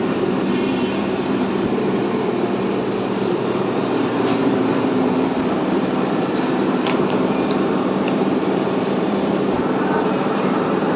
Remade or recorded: remade